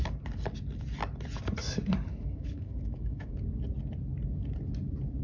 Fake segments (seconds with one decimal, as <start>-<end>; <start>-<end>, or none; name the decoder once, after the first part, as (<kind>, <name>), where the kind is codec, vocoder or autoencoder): 2.1-3.3 (autoencoder, DAC-VAE)